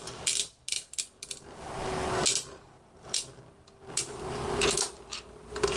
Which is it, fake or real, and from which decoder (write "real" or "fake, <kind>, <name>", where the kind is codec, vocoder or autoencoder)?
real